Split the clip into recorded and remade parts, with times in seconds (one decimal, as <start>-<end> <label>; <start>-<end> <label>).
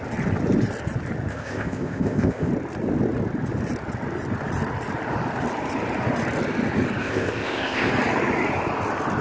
0.0-1.3 recorded; 1.3-2.5 remade; 2.5-7.0 recorded; 7.0-7.9 remade; 7.9-9.2 recorded